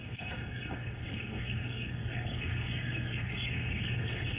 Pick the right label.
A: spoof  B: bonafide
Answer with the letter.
A